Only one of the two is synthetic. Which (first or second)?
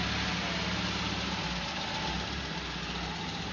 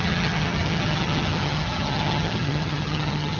second